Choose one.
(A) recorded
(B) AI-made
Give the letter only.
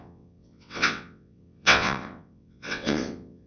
B